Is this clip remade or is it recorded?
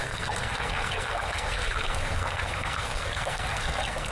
remade